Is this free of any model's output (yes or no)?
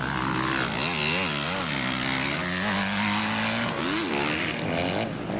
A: yes